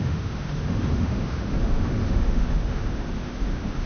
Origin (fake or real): fake